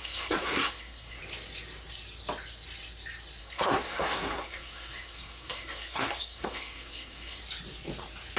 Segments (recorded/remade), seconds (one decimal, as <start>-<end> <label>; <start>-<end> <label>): 0.0-1.2 remade; 1.2-3.4 recorded; 3.4-7.4 remade; 7.4-8.4 recorded